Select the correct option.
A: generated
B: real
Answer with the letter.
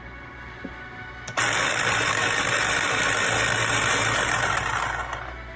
B